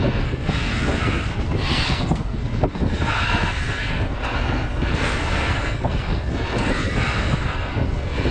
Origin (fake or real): fake